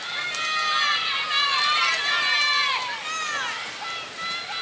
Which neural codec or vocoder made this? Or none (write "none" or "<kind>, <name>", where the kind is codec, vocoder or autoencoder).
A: none